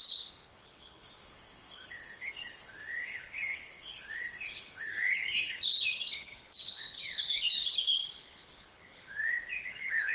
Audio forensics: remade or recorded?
remade